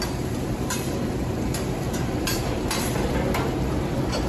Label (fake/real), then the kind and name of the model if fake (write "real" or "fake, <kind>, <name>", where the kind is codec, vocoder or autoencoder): fake, vocoder, BigVGAN v2